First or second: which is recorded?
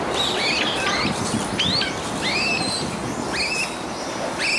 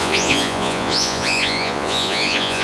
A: first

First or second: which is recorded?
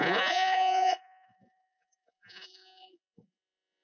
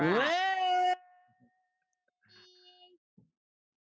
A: second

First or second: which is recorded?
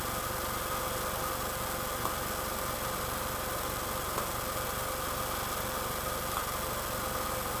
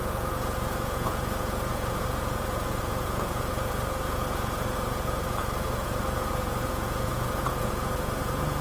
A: first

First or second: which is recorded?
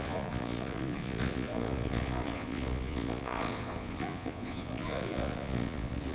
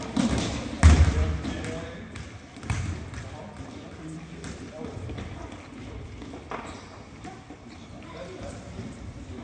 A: second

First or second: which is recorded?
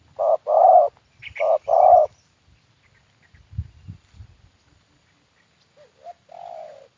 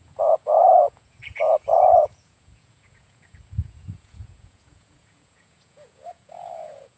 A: first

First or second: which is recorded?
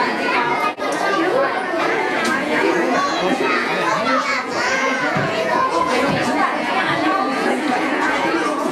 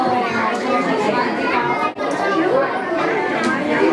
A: second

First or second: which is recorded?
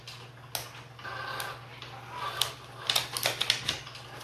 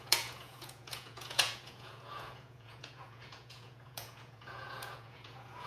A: first